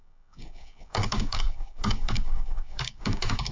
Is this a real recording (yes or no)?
no